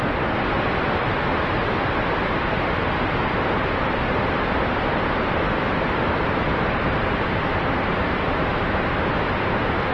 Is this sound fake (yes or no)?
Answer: no